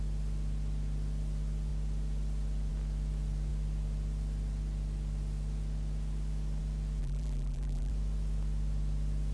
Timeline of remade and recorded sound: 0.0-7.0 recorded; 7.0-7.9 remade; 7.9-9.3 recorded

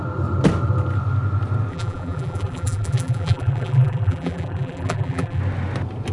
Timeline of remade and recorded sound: 0.0-1.7 recorded; 1.7-5.4 remade; 5.4-6.1 recorded

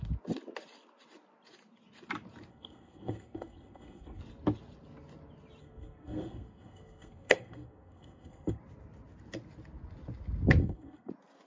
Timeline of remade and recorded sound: 0.0-2.5 recorded; 2.5-4.2 remade; 4.2-5.6 recorded; 5.6-8.6 remade; 8.6-10.6 recorded; 10.6-11.1 remade; 11.1-11.5 recorded

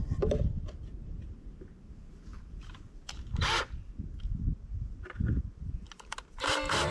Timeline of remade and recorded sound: 0.0-1.0 recorded; 1.0-1.7 remade; 1.7-2.3 recorded; 2.3-3.9 remade; 3.9-4.5 recorded; 4.5-6.9 remade

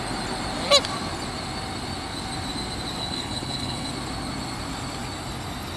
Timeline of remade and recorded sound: 0.0-3.0 recorded; 3.0-3.9 remade; 3.9-5.8 recorded

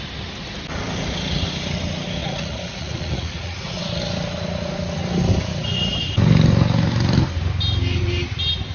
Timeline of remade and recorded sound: 0.0-2.2 recorded; 2.2-3.8 remade; 3.8-8.7 recorded

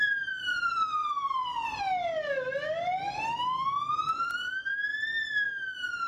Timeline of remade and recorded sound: 0.0-1.0 recorded; 1.0-1.8 remade; 1.8-6.1 recorded

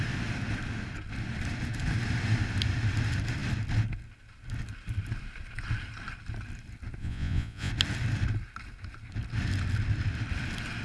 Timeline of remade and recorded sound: 0.0-7.0 recorded; 7.0-7.7 remade; 7.7-10.8 recorded